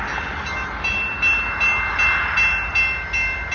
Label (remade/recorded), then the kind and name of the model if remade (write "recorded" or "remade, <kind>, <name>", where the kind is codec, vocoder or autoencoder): recorded